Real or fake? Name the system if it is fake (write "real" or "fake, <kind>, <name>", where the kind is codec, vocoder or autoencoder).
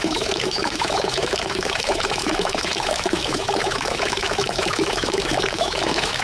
fake, autoencoder, DAC-VAE